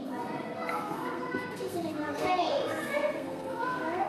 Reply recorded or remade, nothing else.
remade